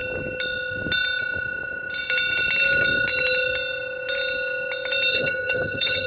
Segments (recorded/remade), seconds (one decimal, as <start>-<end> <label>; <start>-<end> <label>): 0.0-5.1 recorded; 5.1-6.1 remade